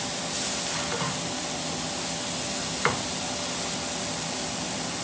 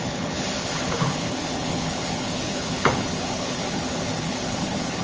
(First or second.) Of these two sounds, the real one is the first